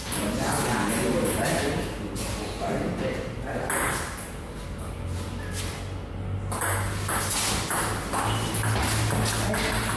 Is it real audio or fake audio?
real